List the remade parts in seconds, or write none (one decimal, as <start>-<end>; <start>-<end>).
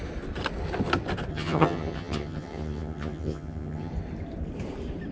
1.3-3.9